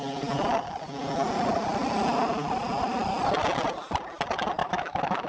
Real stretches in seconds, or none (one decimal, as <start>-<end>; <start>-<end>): 0.0-4.6